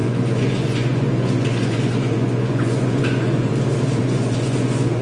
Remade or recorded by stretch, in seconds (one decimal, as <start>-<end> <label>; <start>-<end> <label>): 0.0-3.5 remade; 3.5-4.0 recorded; 4.0-5.0 remade